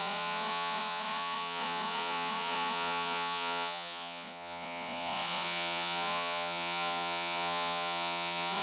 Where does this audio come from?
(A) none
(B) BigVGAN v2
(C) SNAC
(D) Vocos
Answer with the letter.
D